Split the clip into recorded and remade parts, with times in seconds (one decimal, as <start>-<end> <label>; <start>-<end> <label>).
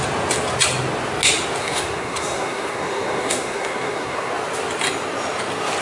0.0-1.6 recorded; 1.6-4.3 remade; 4.3-5.8 recorded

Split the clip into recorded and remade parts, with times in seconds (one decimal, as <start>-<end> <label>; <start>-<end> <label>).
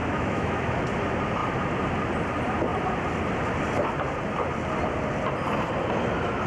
0.0-0.6 remade; 0.6-6.5 recorded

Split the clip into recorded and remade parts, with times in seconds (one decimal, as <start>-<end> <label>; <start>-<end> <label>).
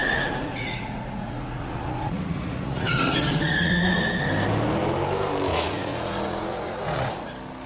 0.0-4.0 remade; 4.0-5.5 recorded; 5.5-7.3 remade; 7.3-7.7 recorded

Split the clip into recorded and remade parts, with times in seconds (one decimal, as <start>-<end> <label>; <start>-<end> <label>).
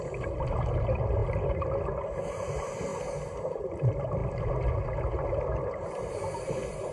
0.0-6.9 recorded